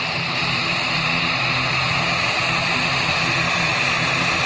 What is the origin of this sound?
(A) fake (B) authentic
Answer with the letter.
A